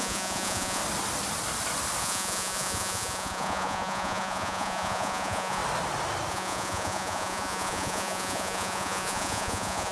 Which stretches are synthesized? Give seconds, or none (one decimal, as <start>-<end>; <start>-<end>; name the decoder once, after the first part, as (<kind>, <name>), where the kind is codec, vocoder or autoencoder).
0.0-0.8 (vocoder, Vocos); 2.0-5.6; 6.3-9.9